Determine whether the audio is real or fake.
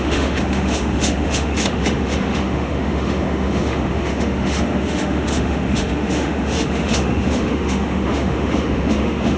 fake